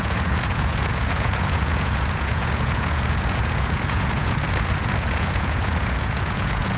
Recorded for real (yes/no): no